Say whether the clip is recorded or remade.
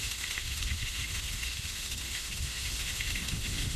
remade